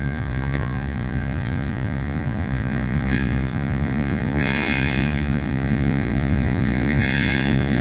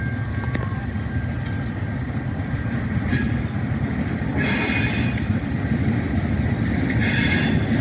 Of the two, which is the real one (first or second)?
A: second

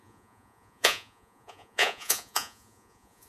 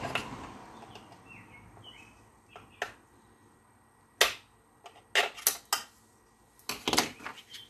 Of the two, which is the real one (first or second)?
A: second